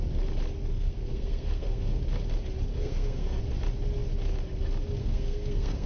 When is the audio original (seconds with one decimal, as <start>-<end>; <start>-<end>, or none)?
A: 0.0-0.7; 2.0-2.7; 3.4-5.0